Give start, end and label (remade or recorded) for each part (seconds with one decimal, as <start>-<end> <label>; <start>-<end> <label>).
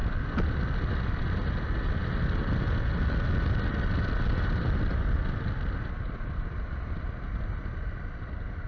0.0-8.7 recorded